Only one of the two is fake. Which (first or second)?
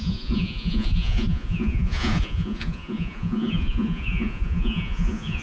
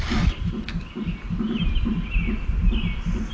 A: first